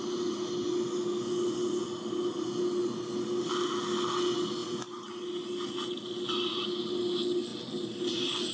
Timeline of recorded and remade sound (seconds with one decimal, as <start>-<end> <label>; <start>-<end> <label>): 0.0-8.5 recorded